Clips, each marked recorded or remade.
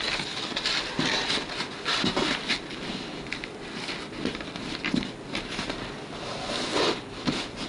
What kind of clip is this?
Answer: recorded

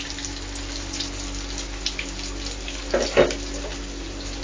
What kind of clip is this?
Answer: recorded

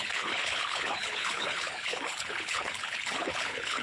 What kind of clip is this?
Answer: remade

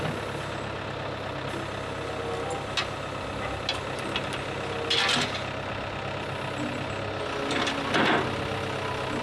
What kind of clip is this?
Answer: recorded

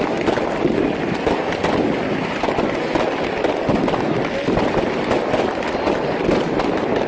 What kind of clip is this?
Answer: recorded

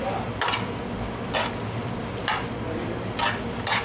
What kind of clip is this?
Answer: recorded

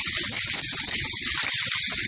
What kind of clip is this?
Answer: recorded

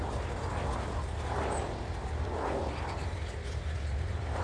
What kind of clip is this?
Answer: recorded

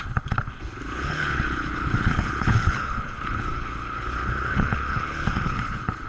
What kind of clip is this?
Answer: remade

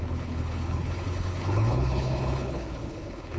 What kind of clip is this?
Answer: remade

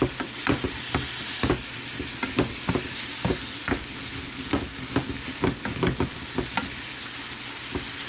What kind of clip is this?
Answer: recorded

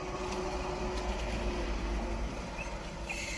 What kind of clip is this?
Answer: recorded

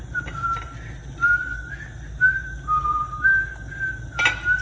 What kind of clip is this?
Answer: recorded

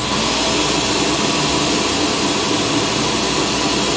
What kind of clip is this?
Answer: recorded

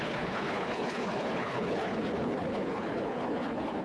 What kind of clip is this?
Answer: remade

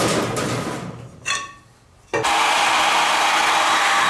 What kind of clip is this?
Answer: recorded